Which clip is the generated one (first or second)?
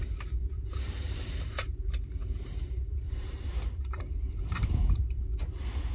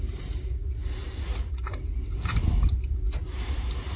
first